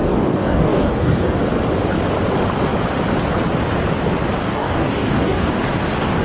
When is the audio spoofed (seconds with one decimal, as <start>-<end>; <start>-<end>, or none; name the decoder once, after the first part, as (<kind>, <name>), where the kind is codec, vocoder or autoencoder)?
0.0-1.4 (codec, DAC); 4.4-5.5